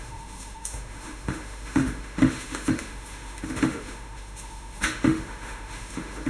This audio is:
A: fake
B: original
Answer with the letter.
A